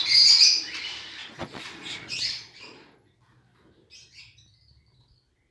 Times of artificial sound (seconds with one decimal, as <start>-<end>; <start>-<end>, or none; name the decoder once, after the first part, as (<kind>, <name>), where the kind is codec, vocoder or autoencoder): 1.2-3.1 (vocoder, Vocos)

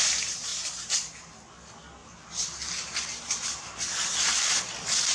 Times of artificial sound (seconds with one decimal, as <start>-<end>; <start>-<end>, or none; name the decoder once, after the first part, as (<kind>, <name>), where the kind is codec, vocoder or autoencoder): 0.5-1.3 (vocoder, BigVGAN v2); 2.0-4.6

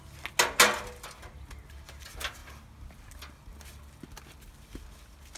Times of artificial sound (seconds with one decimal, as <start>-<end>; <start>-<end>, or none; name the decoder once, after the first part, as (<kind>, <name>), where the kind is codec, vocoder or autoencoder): none

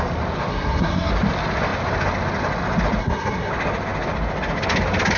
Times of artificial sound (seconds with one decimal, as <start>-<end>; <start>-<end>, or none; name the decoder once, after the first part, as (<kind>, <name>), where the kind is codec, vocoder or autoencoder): 0.5-1.1 (codec, SNAC); 3.0-3.5

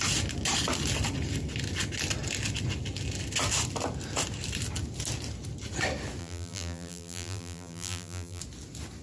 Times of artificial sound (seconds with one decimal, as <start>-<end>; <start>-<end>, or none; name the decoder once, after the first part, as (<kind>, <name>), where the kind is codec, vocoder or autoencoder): 6.2-8.4 (vocoder, BigVGAN v2)

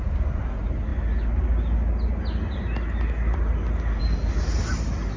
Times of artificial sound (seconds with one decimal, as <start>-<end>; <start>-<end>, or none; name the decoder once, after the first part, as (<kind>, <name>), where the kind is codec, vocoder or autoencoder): none